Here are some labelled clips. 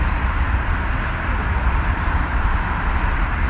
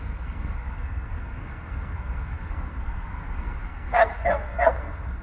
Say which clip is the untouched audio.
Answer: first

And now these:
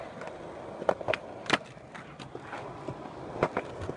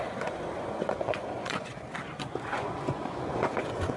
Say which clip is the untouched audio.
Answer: first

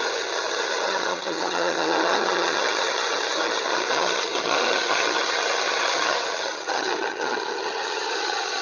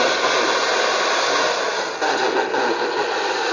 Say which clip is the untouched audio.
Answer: second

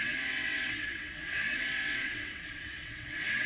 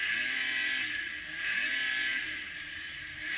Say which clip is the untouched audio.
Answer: second